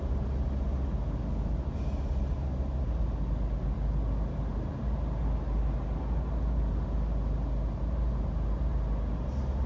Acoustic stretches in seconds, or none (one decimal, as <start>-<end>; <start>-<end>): 0.0-9.7